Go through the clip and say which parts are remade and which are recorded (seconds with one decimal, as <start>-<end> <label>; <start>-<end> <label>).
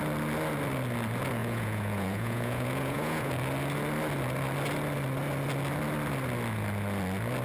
0.0-1.4 recorded; 1.4-3.3 remade; 3.3-7.4 recorded